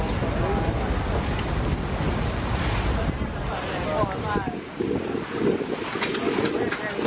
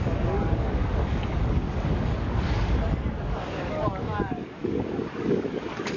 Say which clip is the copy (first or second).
second